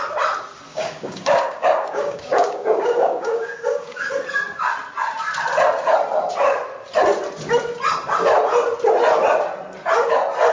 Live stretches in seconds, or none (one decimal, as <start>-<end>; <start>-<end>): 0.0-0.7; 4.1-10.5